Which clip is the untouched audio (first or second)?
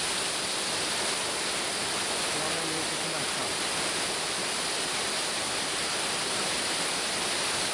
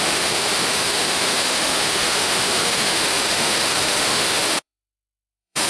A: first